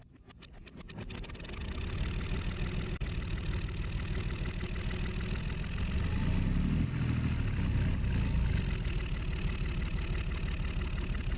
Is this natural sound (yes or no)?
yes